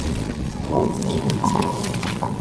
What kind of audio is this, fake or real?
fake